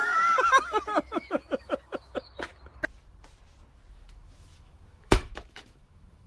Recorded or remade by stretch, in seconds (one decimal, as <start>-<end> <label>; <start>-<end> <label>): 0.0-2.5 remade; 2.5-3.9 recorded; 3.9-6.3 remade